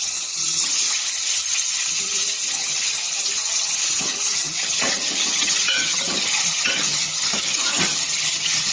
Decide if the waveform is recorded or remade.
remade